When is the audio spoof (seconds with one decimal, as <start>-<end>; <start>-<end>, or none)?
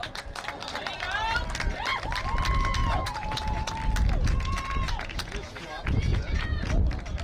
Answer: 2.8-3.7; 4.2-6.7